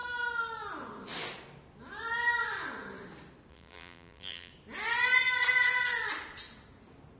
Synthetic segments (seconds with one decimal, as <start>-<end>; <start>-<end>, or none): 3.5-4.5